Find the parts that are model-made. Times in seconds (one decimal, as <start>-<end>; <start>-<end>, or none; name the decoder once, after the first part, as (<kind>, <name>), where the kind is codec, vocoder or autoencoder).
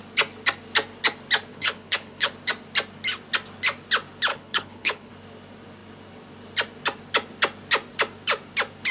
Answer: 1.5-2.3 (codec, HILCodec); 4.3-5.1